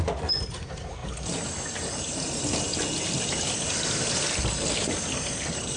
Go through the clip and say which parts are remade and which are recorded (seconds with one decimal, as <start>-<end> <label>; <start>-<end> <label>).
0.0-5.8 recorded